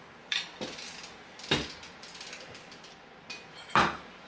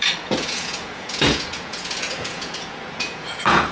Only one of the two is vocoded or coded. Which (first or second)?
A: second